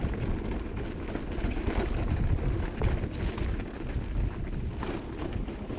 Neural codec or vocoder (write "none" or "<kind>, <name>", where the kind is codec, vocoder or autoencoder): none